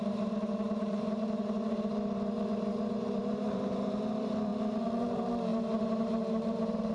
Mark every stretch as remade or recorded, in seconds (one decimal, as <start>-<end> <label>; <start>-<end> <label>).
0.0-4.5 remade; 4.5-5.0 recorded; 5.0-6.9 remade